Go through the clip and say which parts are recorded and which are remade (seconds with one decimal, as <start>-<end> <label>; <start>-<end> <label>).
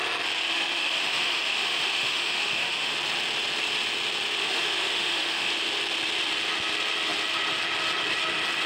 0.0-0.5 recorded; 0.5-2.9 remade; 2.9-4.4 recorded; 4.4-5.5 remade; 5.5-8.7 recorded